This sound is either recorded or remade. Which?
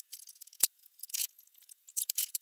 remade